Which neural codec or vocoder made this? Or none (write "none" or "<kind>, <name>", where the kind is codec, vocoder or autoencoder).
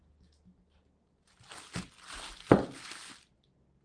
none